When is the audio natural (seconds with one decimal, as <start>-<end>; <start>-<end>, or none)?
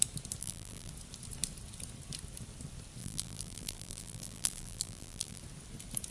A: 0.0-0.4; 0.9-3.0; 5.4-6.1